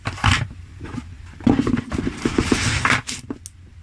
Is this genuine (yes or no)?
yes